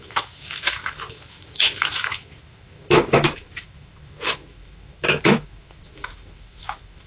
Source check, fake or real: fake